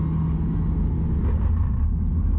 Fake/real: real